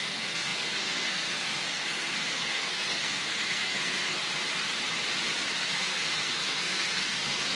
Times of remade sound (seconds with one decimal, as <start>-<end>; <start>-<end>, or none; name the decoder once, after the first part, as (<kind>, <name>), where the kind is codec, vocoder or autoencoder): 0.0-4.2 (codec, SNAC); 5.6-7.5